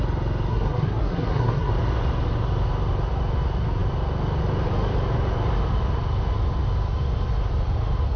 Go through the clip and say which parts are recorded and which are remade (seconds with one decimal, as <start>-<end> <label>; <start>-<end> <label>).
0.0-0.5 recorded; 0.5-1.7 remade; 1.7-8.2 recorded